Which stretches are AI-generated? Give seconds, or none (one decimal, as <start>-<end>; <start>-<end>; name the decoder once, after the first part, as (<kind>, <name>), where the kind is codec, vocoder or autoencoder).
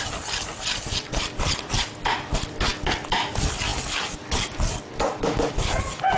none